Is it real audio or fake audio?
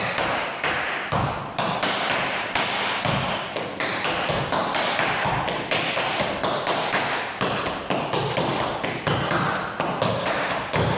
fake